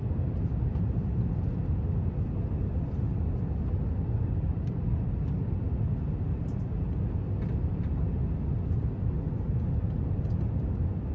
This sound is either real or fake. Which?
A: real